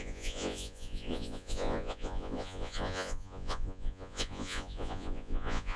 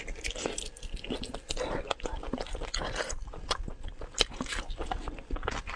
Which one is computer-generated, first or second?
first